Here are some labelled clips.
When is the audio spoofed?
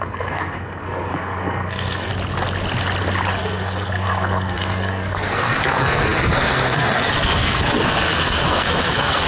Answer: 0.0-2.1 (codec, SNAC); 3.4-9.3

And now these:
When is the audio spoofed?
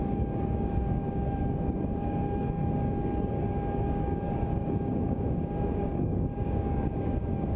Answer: 0.0-7.6 (codec, DAC)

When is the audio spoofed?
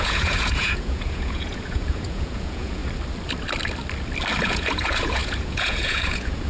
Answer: 0.0-2.8 (vocoder, Vocos); 4.4-6.5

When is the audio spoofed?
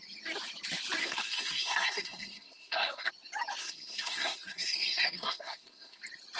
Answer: 1.0-3.1 (codec, SNAC); 3.6-6.0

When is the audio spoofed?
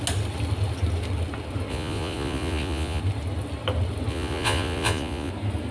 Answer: 1.7-3.0 (vocoder, Vocos); 4.1-5.3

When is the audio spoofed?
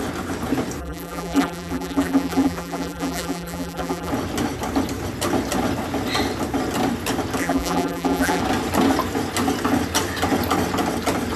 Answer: 0.8-4.1 (vocoder, BigVGAN v2); 7.4-8.4